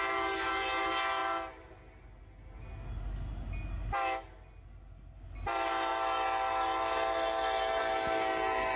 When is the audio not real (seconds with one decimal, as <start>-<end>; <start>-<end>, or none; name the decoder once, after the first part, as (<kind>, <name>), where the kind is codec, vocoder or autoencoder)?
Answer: none